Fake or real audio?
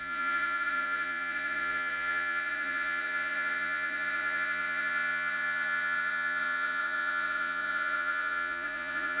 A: fake